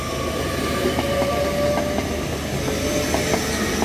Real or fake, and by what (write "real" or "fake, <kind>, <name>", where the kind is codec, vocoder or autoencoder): real